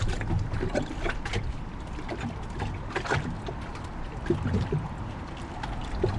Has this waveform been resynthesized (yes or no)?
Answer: no